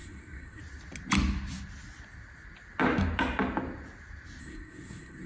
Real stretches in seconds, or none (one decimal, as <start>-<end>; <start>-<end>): 0.6-4.4